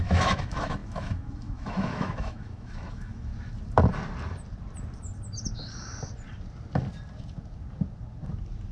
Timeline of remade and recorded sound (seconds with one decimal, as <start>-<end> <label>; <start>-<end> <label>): 0.0-3.3 remade; 3.3-8.7 recorded